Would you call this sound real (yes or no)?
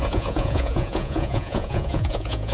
no